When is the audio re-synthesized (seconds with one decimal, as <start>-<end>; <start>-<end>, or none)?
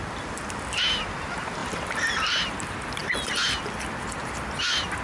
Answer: none